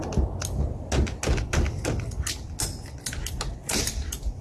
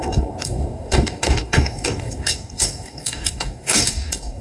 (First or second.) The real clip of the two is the first